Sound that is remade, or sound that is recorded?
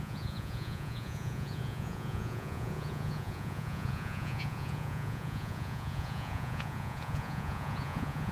remade